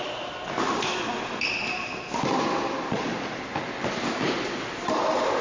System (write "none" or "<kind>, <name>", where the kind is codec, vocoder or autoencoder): none